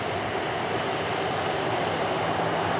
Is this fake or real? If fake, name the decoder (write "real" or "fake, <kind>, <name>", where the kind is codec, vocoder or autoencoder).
real